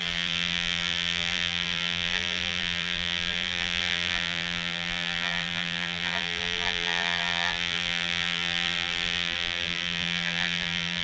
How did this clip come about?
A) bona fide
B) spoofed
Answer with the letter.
B